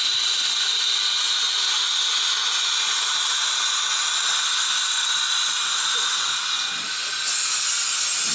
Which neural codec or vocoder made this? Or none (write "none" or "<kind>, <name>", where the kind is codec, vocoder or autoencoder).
none